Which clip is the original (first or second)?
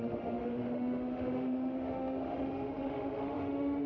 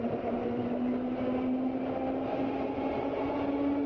second